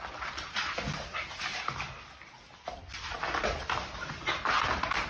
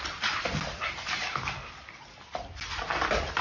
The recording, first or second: first